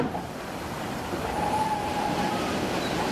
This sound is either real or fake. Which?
fake